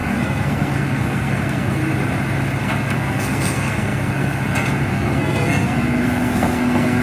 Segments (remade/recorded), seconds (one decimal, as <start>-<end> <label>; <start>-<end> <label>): 0.0-1.8 remade; 1.8-2.6 recorded; 2.6-7.0 remade